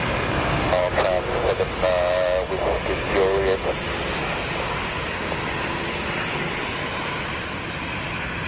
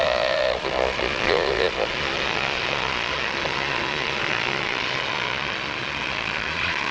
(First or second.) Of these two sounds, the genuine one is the first